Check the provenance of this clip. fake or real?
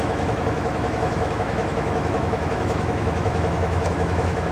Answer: fake